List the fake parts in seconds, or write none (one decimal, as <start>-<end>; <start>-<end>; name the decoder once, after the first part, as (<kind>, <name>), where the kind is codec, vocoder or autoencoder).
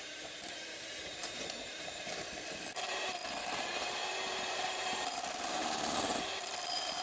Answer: 0.0-3.2 (vocoder, BigVGAN v2); 4.1-7.0